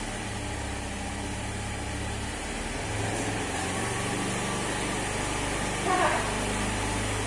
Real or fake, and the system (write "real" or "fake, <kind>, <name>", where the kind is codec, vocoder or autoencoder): real